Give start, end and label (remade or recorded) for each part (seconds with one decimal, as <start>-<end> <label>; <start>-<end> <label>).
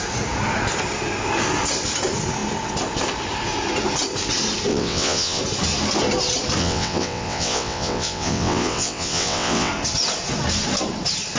0.0-4.7 recorded; 4.7-5.4 remade; 5.4-6.6 recorded; 6.6-9.7 remade; 9.7-11.4 recorded